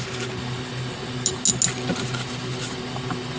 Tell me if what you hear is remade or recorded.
recorded